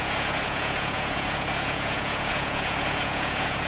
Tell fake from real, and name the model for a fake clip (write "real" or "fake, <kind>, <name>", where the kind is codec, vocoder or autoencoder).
fake, vocoder, Vocos